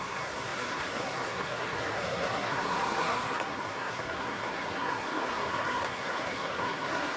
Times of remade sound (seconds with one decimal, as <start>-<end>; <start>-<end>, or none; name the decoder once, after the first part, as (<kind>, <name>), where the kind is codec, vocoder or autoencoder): 0.0-7.2 (codec, SNAC)